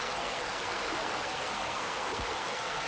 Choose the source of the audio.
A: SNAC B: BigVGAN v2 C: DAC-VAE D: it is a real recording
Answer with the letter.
A